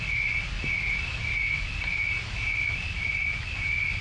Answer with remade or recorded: recorded